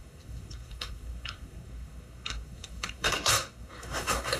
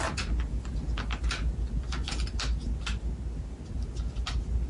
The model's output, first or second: first